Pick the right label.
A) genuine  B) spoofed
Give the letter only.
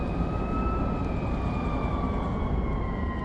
A